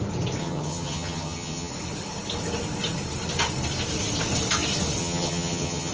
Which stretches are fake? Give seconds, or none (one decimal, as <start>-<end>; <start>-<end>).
0.4-1.7; 5.0-5.9